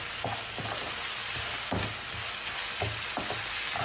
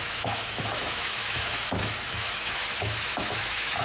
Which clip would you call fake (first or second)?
second